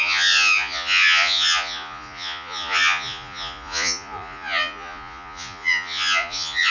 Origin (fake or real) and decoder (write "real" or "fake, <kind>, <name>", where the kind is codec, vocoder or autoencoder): fake, vocoder, Vocos